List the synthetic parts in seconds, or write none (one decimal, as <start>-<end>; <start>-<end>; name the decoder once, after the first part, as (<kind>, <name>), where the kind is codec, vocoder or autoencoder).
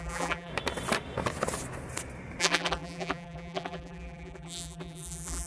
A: 0.0-0.5 (vocoder, BigVGAN v2); 2.4-5.5